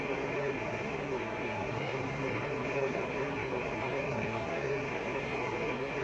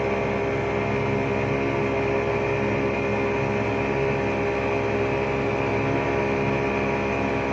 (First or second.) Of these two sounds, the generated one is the first